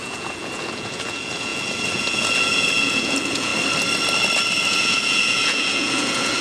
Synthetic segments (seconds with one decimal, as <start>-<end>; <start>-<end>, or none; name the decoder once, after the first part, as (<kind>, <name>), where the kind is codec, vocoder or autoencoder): 0.0-3.5 (vocoder, Vocos); 4.7-6.4